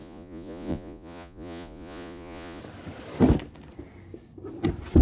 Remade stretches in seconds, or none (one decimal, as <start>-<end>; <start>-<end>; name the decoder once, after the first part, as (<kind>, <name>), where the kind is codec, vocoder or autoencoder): 0.0-2.6 (vocoder, Vocos)